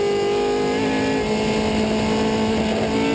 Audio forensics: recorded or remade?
recorded